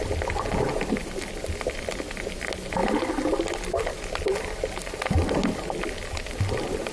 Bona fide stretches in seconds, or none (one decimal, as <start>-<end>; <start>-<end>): 0.0-6.9